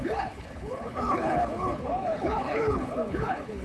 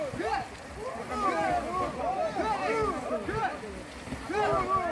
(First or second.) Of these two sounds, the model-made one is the first